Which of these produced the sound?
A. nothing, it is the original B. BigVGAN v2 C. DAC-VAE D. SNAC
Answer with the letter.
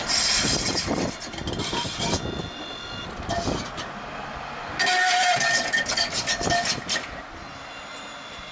A